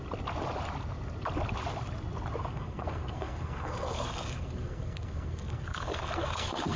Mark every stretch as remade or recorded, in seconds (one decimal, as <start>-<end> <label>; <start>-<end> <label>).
0.0-2.4 recorded; 2.4-6.8 remade